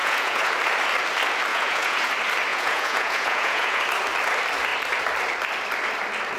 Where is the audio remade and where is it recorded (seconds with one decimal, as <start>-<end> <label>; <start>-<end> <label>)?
0.0-0.5 remade; 0.5-1.5 recorded; 1.5-2.1 remade; 2.1-2.5 recorded; 2.5-3.8 remade; 3.8-6.4 recorded

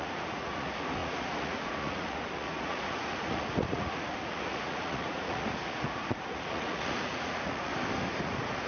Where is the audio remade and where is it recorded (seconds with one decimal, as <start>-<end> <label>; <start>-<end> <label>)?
0.0-7.7 remade; 7.7-8.2 recorded; 8.2-8.7 remade

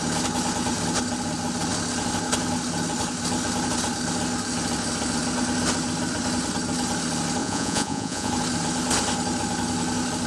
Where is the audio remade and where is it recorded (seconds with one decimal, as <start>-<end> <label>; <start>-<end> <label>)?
0.0-7.4 recorded; 7.4-8.3 remade; 8.3-10.3 recorded

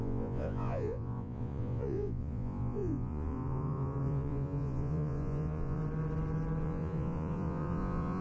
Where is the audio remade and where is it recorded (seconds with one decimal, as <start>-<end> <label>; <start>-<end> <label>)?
0.0-5.8 remade; 5.8-6.6 recorded; 6.6-8.2 remade